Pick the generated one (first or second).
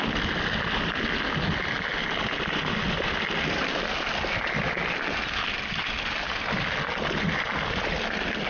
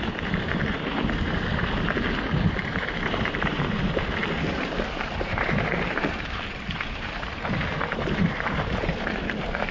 second